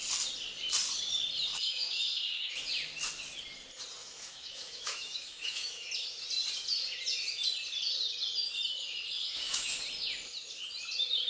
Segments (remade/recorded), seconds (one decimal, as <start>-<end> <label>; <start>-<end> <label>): 0.0-1.5 recorded; 1.5-2.5 remade; 2.5-4.0 recorded; 4.0-5.9 remade; 5.9-9.1 recorded; 9.1-9.8 remade; 9.8-11.3 recorded